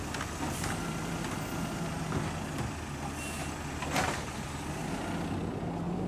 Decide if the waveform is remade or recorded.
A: recorded